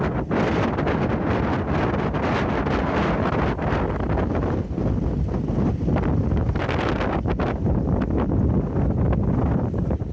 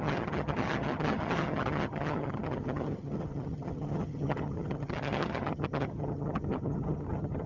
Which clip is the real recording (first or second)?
first